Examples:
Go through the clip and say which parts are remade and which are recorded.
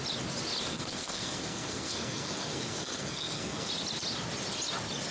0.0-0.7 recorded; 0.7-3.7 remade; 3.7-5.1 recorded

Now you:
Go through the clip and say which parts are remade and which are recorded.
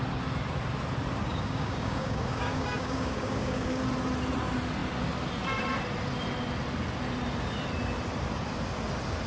0.0-1.2 recorded; 1.2-3.8 remade; 3.8-9.3 recorded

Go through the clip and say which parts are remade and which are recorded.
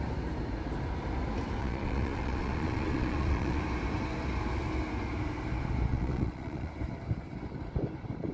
0.0-1.6 recorded; 1.6-3.6 remade; 3.6-5.9 recorded; 5.9-6.7 remade; 6.7-8.3 recorded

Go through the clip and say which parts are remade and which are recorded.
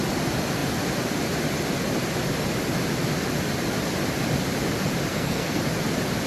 0.0-5.1 recorded; 5.1-5.6 remade; 5.6-6.3 recorded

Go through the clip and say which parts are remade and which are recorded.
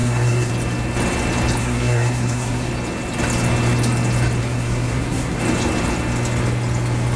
0.0-0.5 remade; 0.5-1.6 recorded; 1.6-2.7 remade; 2.7-4.4 recorded; 4.4-5.4 remade; 5.4-7.2 recorded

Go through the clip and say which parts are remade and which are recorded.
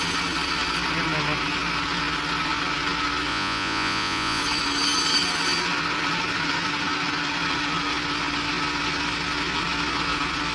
0.0-3.3 recorded; 3.3-4.4 remade; 4.4-10.5 recorded